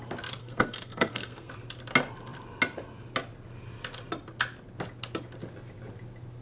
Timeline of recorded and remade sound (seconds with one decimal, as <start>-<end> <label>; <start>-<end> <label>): 0.0-0.4 recorded; 0.4-1.5 remade; 1.5-6.4 recorded

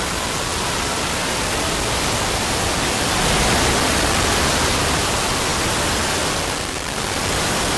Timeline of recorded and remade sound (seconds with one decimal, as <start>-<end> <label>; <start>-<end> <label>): 0.0-7.8 recorded

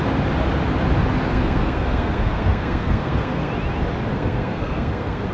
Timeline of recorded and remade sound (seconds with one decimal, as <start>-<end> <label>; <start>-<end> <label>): 0.0-1.3 recorded; 1.3-3.5 remade; 3.5-4.1 recorded; 4.1-5.3 remade

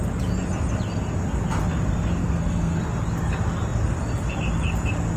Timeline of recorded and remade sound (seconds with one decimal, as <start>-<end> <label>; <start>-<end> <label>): 0.0-2.2 recorded; 2.2-2.8 remade; 2.8-5.2 recorded